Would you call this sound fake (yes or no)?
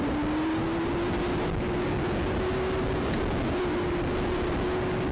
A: no